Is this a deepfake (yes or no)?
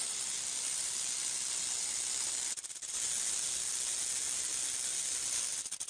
no